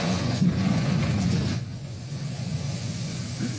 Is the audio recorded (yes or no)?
no